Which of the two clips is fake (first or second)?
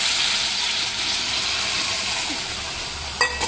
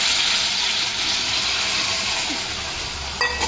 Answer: first